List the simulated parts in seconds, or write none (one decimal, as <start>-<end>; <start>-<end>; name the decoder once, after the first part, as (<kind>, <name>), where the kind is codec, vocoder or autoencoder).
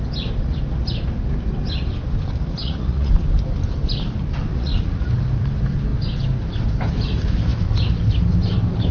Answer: 2.6-3.1 (vocoder, Vocos); 4.5-5.1